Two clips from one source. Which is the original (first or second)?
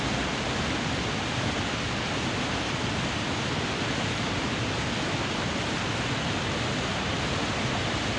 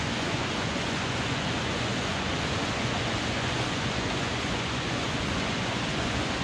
first